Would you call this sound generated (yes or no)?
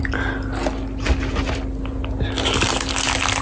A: no